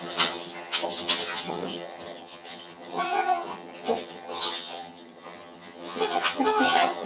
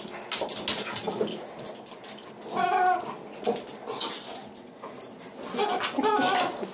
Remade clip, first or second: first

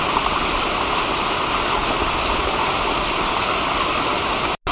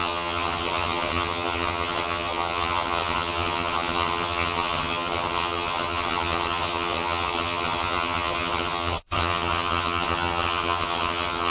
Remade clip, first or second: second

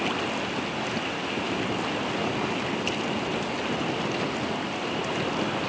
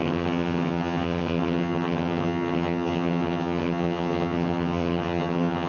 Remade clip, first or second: second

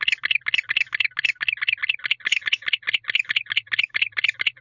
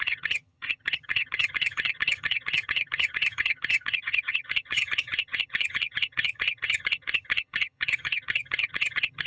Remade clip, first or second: second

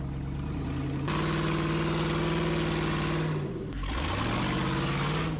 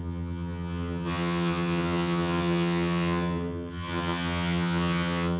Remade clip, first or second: second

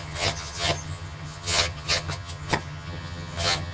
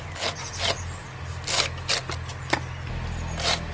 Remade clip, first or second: first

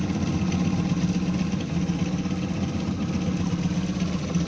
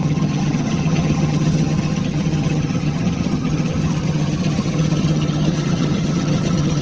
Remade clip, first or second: second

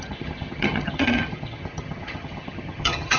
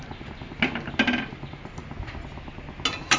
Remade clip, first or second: first